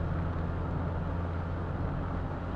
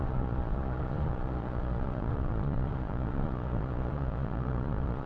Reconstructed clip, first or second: second